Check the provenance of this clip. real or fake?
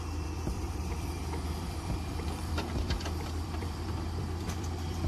fake